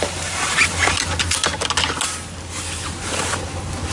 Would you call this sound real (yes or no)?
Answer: yes